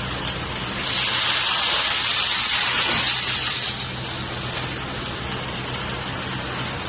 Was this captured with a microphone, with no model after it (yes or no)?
yes